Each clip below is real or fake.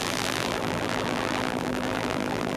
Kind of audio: fake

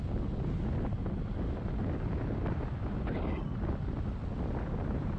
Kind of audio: real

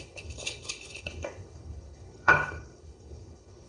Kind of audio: fake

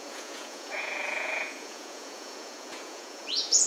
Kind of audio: fake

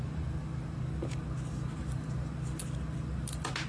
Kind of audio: real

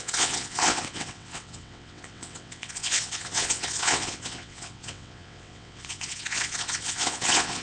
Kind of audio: fake